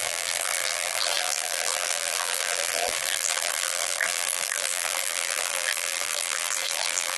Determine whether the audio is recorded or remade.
remade